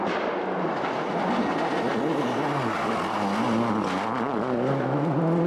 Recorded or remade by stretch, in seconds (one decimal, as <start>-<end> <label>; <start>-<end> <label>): 0.0-5.5 recorded